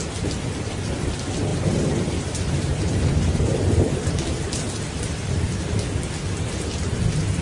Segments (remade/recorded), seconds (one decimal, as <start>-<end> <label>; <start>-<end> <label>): 0.0-1.5 recorded; 1.5-4.1 remade; 4.1-7.4 recorded